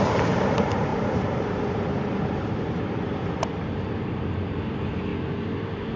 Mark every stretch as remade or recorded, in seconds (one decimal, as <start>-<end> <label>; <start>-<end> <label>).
0.0-5.1 remade; 5.1-6.0 recorded